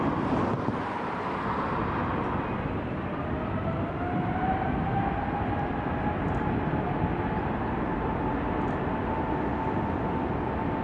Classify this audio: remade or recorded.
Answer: recorded